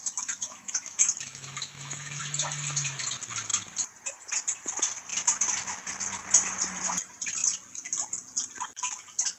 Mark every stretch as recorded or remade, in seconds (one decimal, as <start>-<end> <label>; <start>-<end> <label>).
0.0-2.2 remade; 2.2-9.4 recorded